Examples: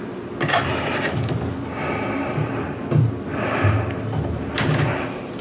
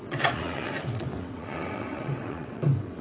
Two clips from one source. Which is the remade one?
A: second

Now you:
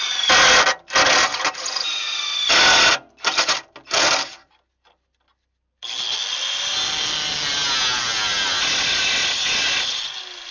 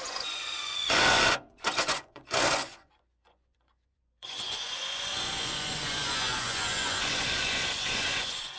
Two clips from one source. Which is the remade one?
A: second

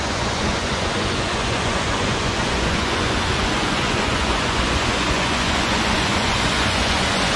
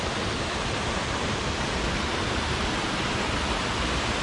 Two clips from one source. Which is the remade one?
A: first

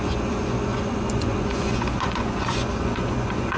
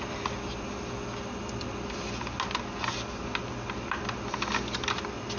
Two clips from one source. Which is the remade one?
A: first